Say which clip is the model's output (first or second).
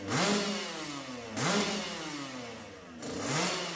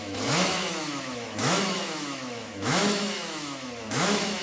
second